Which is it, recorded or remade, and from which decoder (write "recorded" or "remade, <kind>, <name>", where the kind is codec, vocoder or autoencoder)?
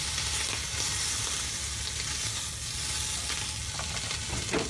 recorded